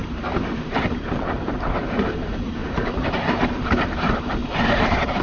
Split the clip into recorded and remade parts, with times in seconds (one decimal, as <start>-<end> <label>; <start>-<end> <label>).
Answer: 0.0-2.6 remade; 2.6-3.1 recorded; 3.1-5.2 remade